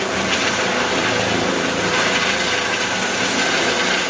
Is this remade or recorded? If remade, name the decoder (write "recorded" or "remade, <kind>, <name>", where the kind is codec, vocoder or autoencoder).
recorded